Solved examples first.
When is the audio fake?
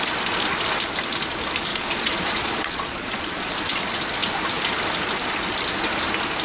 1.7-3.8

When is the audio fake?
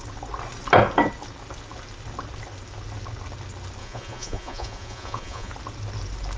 3.8-5.5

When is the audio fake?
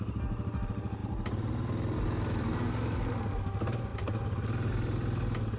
none